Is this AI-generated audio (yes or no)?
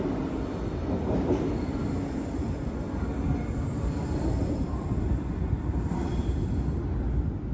no